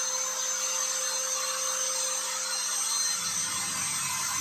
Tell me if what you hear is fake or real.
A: real